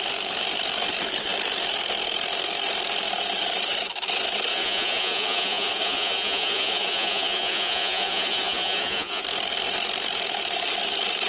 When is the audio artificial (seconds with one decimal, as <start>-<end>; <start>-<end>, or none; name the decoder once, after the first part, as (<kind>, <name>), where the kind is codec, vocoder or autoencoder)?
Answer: 4.5-9.2 (vocoder, Vocos)